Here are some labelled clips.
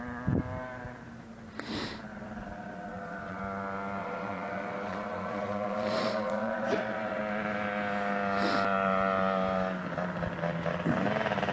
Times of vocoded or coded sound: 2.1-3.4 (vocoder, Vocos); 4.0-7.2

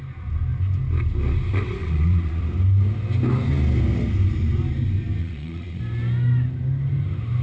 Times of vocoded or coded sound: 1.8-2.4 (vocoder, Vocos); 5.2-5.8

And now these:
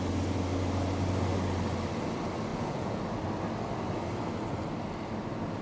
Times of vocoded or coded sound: 2.5-3.0 (vocoder, Vocos)

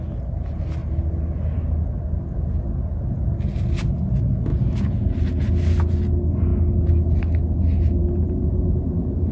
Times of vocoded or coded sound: 4.5-5.0 (vocoder, Vocos)

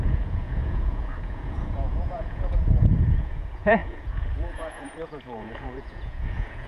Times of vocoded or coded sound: 0.0-6.7 (vocoder, Vocos)

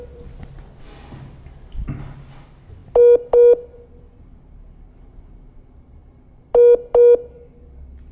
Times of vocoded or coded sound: none

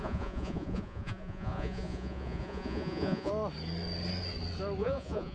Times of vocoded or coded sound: 0.0-3.3 (vocoder, Vocos); 4.8-5.3

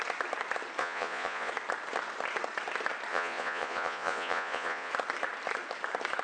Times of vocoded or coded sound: 0.8-1.5 (vocoder, Vocos); 3.1-4.9